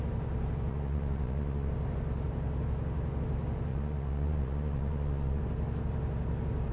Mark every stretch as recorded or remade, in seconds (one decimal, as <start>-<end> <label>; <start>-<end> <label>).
0.0-0.7 recorded; 0.7-1.7 remade; 1.7-3.7 recorded; 3.7-5.4 remade; 5.4-6.7 recorded